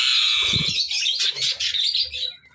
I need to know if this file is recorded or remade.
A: recorded